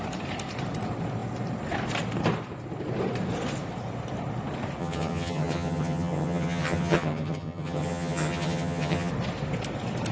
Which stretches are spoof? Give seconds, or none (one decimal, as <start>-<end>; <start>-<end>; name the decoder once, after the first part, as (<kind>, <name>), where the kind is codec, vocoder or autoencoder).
4.8-9.1 (vocoder, HiFi-GAN)